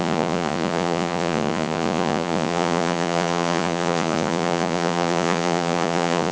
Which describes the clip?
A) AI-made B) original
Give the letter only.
A